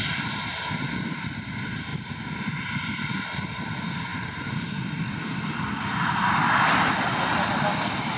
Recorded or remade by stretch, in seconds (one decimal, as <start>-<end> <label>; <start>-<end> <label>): 0.0-8.2 recorded